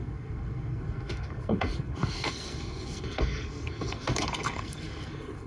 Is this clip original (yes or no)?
no